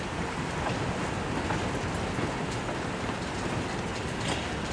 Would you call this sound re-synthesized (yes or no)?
no